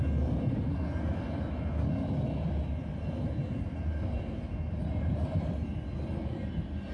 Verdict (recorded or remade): recorded